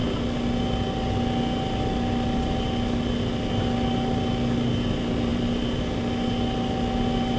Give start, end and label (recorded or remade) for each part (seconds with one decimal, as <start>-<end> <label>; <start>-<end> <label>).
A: 0.0-7.4 recorded